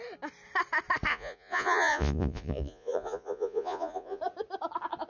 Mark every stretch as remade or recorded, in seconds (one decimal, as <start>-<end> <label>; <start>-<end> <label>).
0.0-1.1 recorded; 1.1-4.2 remade; 4.2-5.1 recorded